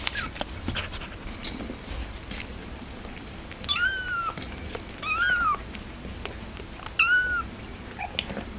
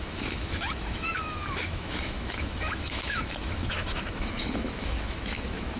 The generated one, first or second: second